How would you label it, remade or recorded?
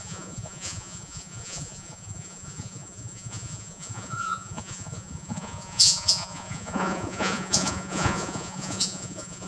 remade